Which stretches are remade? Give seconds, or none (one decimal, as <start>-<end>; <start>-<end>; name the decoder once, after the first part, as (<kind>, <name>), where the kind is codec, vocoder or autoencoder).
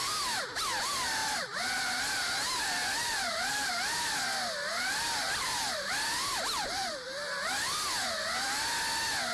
1.2-2.0 (vocoder, BigVGAN v2); 2.8-3.7; 4.7-5.9